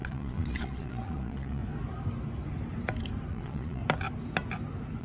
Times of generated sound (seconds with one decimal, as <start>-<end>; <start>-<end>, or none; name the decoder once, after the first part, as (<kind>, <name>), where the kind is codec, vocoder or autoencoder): 0.0-1.6 (vocoder, Vocos); 3.3-3.8